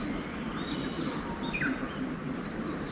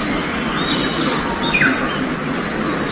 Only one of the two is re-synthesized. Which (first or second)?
first